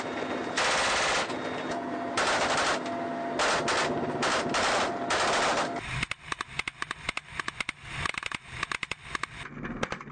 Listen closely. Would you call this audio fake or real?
real